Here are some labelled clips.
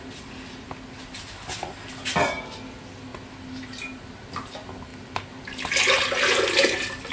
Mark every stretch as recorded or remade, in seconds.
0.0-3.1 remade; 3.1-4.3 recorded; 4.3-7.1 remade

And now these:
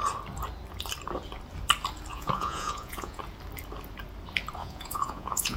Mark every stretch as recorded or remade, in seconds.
0.0-2.1 recorded; 2.1-3.2 remade; 3.2-4.6 recorded; 4.6-5.6 remade

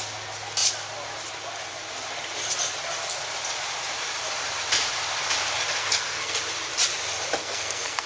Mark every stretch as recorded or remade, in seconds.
0.0-5.8 recorded; 5.8-6.4 remade; 6.4-7.4 recorded; 7.4-8.1 remade

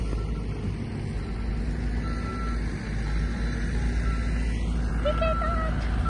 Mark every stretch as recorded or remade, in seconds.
0.0-6.1 recorded

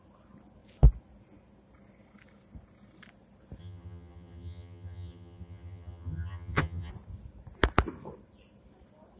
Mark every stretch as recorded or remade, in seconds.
0.0-3.6 recorded; 3.6-6.9 remade; 6.9-9.2 recorded

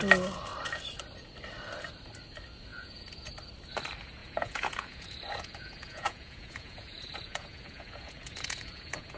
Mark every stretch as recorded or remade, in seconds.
0.0-2.7 recorded; 2.7-3.3 remade; 3.3-4.2 recorded; 4.2-9.2 remade

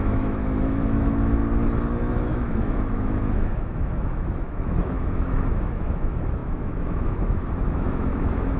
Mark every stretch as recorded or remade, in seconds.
0.0-1.4 remade; 1.4-2.1 recorded; 2.1-8.6 remade

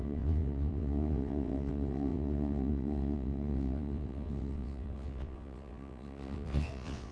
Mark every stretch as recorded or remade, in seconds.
0.0-7.1 remade